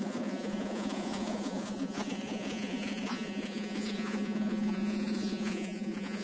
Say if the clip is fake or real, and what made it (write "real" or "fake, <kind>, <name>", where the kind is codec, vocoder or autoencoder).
fake, vocoder, Vocos